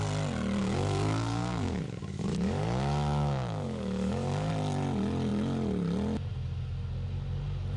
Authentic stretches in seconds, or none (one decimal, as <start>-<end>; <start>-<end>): 0.0-0.6; 4.5-7.8

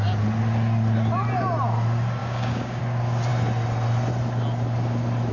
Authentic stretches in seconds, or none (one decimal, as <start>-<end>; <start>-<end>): 0.0-2.2; 2.8-5.3

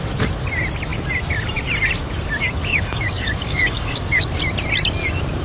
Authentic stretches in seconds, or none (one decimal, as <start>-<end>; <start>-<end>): 0.0-2.7; 4.3-5.4

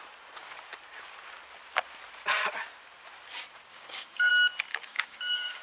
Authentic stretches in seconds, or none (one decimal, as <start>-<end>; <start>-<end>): 0.0-3.7; 4.3-4.7

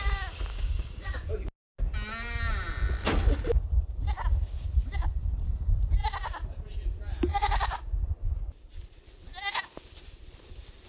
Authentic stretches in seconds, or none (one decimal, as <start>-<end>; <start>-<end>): 0.0-0.5; 1.3-7.3; 7.9-10.9